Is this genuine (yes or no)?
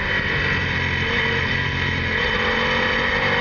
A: yes